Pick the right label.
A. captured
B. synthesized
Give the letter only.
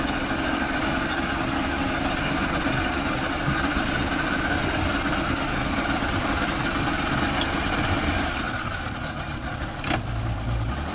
A